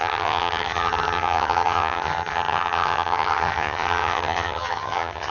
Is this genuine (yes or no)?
no